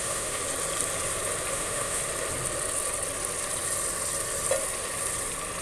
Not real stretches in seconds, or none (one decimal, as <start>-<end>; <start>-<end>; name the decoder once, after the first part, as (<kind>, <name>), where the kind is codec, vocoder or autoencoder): 0.0-0.4 (autoencoder, DAC-VAE); 1.5-2.0